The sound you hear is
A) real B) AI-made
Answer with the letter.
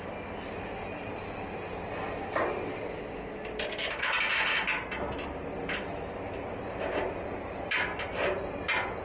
A